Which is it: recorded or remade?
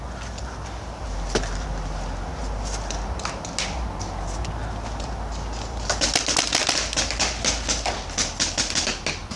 recorded